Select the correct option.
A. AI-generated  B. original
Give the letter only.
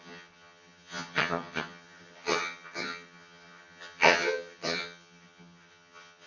A